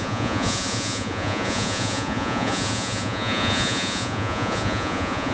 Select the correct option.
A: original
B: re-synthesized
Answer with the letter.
B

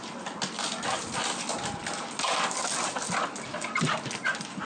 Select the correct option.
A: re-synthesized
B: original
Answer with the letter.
B